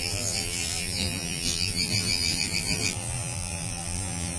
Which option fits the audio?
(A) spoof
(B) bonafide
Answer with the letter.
A